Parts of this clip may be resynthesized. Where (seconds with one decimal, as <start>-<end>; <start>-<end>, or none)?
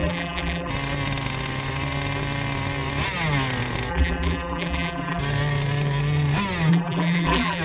0.0-0.7; 3.9-5.2; 6.7-7.6